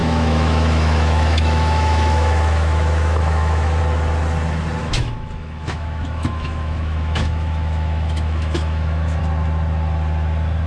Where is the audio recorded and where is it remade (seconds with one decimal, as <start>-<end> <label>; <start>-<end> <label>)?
0.0-3.8 remade; 3.8-4.8 recorded; 4.8-9.2 remade; 9.2-10.7 recorded